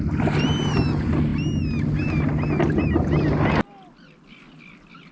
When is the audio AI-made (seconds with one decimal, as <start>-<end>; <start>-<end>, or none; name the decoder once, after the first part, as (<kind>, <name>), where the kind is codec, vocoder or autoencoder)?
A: none